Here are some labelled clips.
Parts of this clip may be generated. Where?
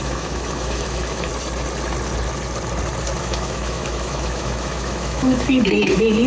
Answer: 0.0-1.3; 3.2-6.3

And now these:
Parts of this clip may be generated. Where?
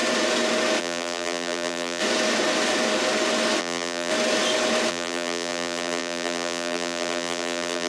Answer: 0.8-2.0; 3.6-4.1; 4.9-7.9